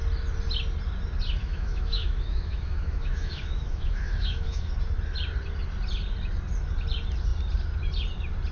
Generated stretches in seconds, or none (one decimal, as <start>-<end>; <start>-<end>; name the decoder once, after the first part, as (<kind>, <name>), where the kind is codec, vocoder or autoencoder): 1.4-4.7 (autoencoder, DAC-VAE)